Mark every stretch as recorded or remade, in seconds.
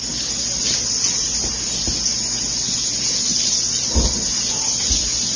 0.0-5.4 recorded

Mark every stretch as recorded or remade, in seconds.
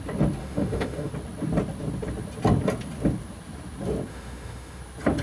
0.0-0.4 recorded; 0.4-1.1 remade; 1.1-4.1 recorded; 4.1-4.8 remade; 4.8-5.2 recorded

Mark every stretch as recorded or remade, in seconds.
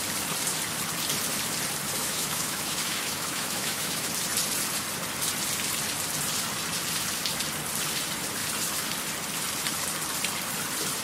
0.0-2.0 recorded; 2.0-4.1 remade; 4.1-11.0 recorded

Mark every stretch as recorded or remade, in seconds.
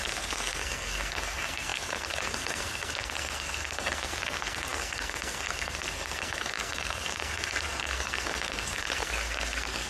0.0-9.9 remade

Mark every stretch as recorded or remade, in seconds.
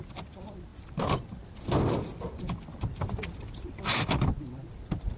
0.0-5.2 recorded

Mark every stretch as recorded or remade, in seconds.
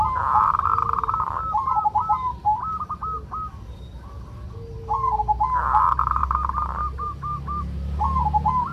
0.0-8.7 recorded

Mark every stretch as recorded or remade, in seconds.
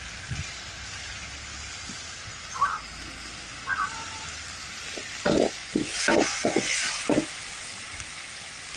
0.0-5.6 recorded; 5.6-6.9 remade; 6.9-8.8 recorded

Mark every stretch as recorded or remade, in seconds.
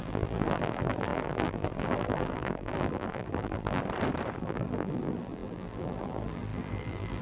0.0-3.8 remade; 3.8-4.4 recorded; 4.4-7.2 remade